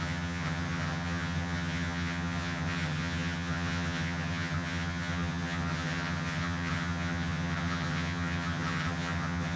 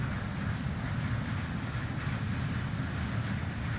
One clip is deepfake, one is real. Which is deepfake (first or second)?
first